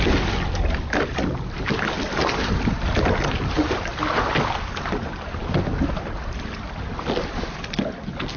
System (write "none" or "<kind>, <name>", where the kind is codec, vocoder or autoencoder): none